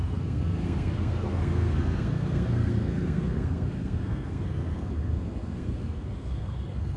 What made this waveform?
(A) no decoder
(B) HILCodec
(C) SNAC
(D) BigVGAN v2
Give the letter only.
C